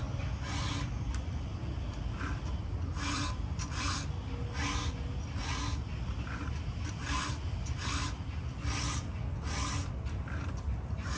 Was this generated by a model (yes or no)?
no